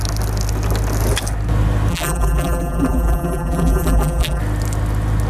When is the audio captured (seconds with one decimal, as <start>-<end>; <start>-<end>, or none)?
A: 0.0-1.9; 4.4-5.3